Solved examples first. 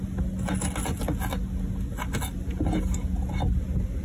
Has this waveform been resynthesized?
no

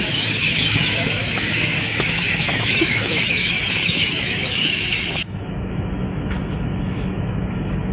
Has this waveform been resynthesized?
yes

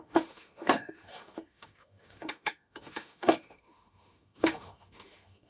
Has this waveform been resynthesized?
yes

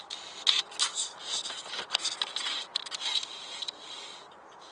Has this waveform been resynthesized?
no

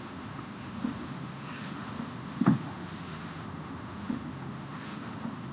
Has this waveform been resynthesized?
yes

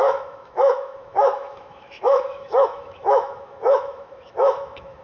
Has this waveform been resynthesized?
yes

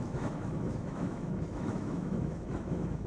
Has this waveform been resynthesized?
yes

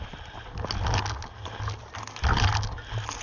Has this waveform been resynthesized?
no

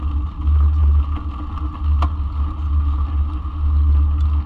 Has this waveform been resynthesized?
no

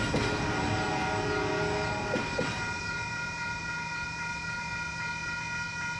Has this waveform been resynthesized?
no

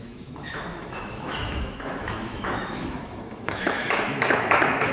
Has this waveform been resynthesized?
yes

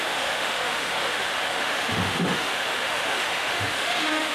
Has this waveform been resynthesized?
yes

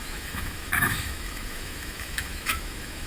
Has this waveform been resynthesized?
yes